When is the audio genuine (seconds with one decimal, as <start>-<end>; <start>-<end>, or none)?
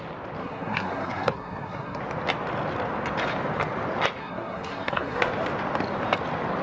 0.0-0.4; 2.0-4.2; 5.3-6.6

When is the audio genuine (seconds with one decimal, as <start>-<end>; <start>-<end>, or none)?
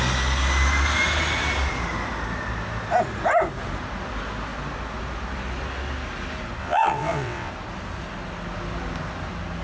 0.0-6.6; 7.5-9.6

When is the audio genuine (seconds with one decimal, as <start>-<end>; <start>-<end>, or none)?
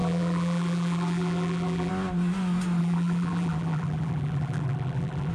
1.9-2.8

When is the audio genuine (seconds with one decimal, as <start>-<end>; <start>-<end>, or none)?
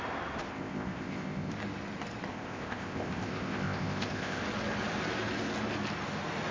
0.0-0.5; 1.5-2.3; 4.4-6.5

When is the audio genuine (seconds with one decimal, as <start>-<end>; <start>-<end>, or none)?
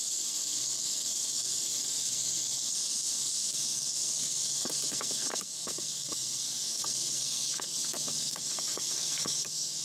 none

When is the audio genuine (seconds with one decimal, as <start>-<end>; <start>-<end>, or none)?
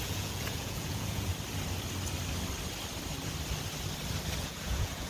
1.3-4.4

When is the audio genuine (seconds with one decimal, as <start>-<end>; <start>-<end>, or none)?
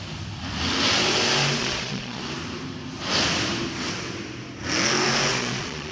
0.0-1.6; 2.2-5.3